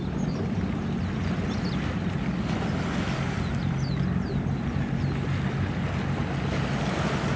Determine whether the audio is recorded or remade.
recorded